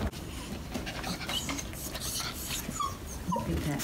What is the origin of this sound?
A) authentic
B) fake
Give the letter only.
A